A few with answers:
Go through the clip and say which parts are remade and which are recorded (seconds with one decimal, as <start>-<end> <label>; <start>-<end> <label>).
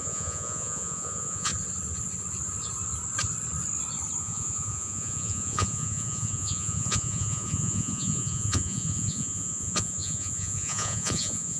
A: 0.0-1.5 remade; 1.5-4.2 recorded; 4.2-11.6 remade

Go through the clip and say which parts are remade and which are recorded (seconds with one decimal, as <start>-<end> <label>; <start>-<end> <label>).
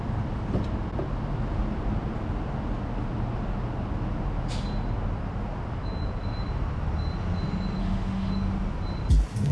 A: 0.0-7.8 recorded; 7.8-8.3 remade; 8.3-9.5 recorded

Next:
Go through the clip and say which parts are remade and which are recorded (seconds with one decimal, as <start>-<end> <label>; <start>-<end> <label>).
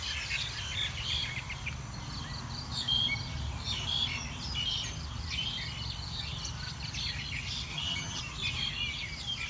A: 0.0-7.7 recorded; 7.7-8.2 remade; 8.2-9.5 recorded